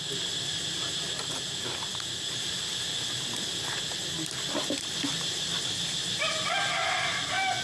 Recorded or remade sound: recorded